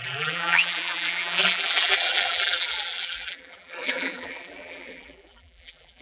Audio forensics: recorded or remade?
remade